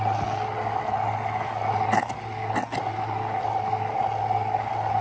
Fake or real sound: real